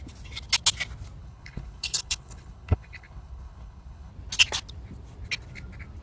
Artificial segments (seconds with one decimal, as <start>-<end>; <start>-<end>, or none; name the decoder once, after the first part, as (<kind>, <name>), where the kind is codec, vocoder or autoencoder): 1.2-4.1 (codec, HILCodec)